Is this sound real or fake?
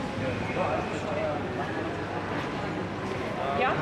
real